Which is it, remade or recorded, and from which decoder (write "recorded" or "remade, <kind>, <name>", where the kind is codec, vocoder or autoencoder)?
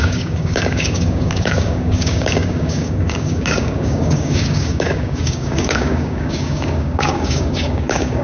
remade, codec, DAC